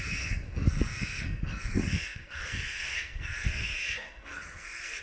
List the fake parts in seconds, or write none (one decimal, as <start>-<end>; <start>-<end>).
0.0-5.0